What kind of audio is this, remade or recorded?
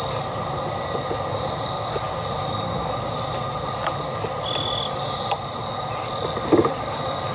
recorded